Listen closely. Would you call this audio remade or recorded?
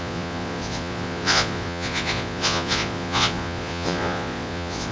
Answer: remade